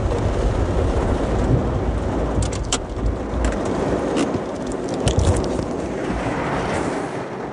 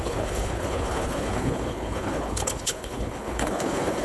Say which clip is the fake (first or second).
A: second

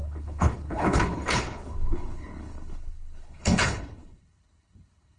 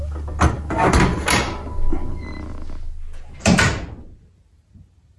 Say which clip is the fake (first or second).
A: first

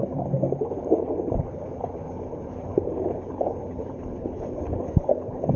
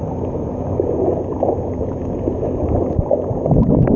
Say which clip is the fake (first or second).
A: first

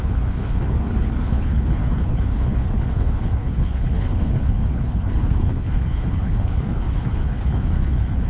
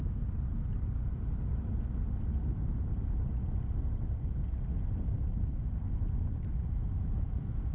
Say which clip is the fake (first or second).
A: first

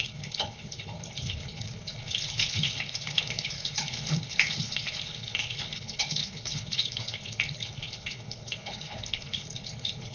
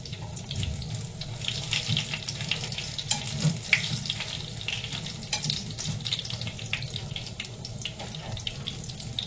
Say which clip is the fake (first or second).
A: first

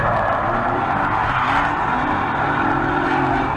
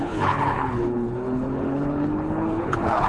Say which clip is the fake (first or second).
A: second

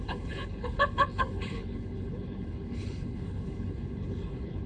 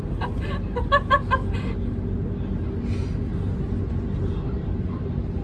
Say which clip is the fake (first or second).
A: first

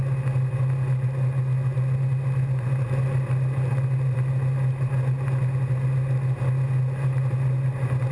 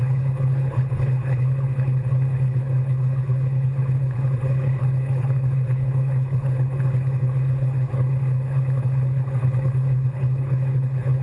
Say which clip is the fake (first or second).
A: second